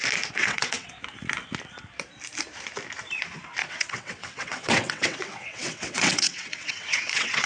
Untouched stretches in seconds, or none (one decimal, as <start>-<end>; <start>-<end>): 0.0-0.4; 0.9-3.6